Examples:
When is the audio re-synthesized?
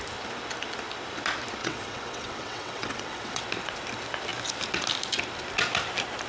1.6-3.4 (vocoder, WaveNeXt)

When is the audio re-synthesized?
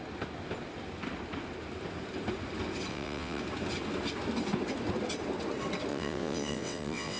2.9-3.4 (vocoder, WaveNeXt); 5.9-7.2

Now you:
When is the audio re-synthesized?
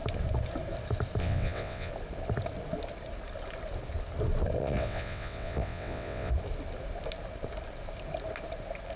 1.2-1.9 (vocoder, WaveNeXt); 4.6-6.3